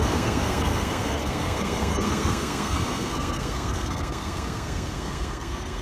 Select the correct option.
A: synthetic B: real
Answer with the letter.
A